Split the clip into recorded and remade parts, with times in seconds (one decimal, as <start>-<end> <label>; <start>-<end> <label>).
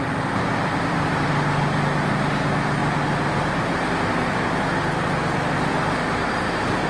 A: 0.0-6.9 recorded